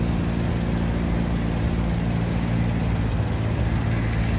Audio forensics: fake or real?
real